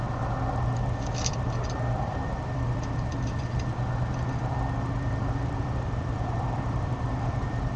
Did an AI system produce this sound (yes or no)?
yes